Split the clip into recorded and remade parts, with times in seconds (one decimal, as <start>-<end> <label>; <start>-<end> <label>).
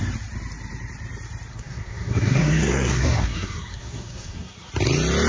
0.0-1.5 recorded; 1.5-4.7 remade; 4.7-5.3 recorded